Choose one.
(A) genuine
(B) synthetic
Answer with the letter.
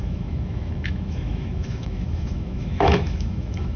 B